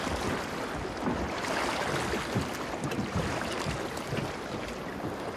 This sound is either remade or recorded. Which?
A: recorded